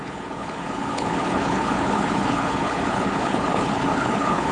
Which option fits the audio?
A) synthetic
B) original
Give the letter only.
A